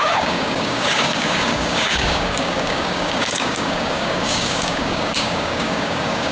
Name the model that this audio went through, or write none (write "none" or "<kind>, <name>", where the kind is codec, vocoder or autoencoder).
codec, DAC